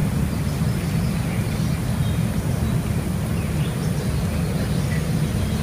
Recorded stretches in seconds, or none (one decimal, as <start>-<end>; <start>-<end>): 0.0-5.6